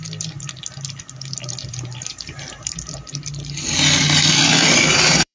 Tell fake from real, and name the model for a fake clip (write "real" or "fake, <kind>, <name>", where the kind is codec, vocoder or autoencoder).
fake, vocoder, BigVGAN v2